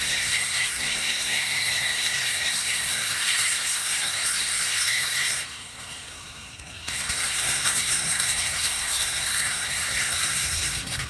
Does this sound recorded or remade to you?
remade